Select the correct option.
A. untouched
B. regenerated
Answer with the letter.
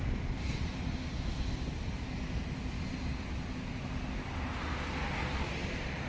A